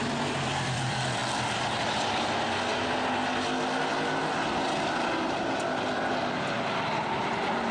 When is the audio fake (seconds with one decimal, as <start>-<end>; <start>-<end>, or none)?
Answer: 0.0-1.2; 5.8-7.7